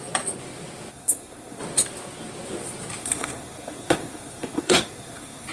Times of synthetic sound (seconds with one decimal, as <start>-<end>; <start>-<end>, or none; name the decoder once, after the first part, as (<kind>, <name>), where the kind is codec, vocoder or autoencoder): 0.9-1.6 (codec, SNAC); 3.0-5.5